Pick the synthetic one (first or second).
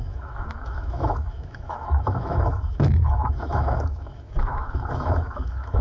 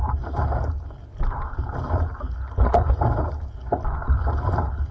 first